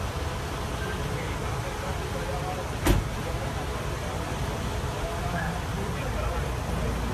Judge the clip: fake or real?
real